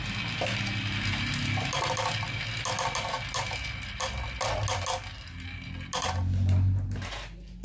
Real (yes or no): yes